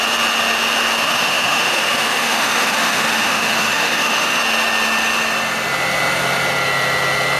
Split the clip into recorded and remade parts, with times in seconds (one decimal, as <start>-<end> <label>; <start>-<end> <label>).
0.0-1.0 recorded; 1.0-4.4 remade; 4.4-7.4 recorded